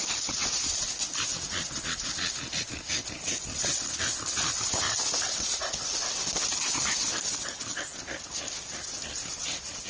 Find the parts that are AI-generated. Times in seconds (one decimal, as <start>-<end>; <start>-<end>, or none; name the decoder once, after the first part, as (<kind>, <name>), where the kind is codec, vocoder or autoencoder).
none